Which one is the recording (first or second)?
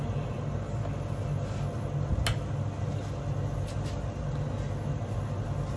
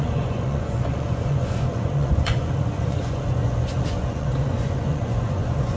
first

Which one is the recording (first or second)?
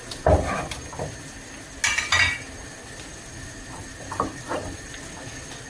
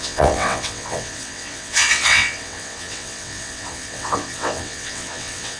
first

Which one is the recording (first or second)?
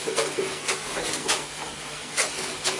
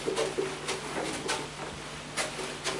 second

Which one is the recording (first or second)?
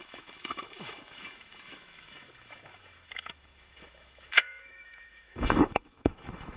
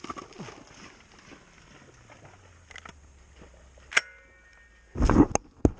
second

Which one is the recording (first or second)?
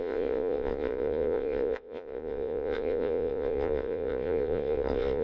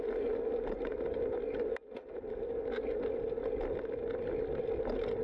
second